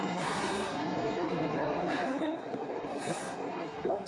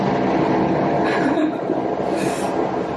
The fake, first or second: first